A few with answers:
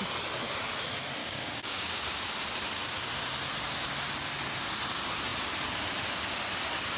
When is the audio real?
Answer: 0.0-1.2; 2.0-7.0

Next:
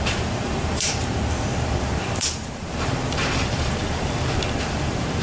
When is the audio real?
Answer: none